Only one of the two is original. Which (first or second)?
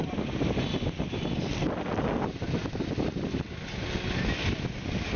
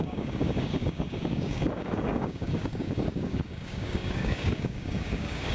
first